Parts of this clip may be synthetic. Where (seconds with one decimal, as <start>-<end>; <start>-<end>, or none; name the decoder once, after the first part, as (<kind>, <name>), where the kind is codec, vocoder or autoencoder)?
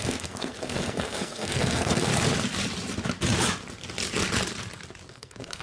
0.0-2.1 (codec, SNAC); 5.1-5.6